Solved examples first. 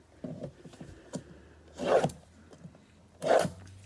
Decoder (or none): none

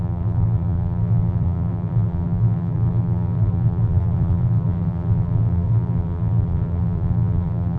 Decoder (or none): vocoder, BigVGAN v2